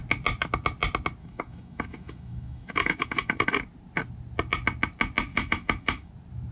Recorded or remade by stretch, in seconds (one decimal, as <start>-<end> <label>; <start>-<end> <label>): 0.0-1.2 recorded; 1.2-3.5 remade; 3.5-5.3 recorded; 5.3-6.1 remade; 6.1-6.5 recorded